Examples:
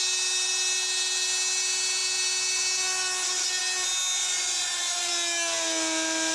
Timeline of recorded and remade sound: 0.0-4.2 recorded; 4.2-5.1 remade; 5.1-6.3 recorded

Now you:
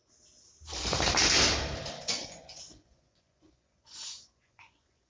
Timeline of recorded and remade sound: 0.0-2.0 recorded; 2.0-5.1 remade